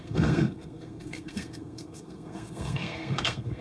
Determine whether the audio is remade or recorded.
remade